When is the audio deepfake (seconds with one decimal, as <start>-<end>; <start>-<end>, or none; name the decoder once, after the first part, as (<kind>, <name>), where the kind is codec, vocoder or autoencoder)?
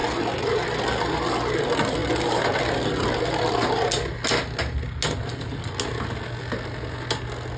none